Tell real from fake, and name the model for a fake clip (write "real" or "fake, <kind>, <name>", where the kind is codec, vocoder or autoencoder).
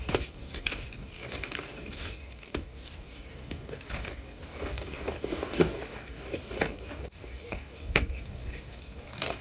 fake, codec, DAC